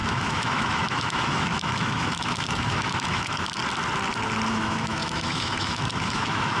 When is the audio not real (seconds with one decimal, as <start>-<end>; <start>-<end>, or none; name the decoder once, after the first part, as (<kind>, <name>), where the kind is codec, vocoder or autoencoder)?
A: 0.0-3.6 (autoencoder, DAC-VAE); 4.5-6.6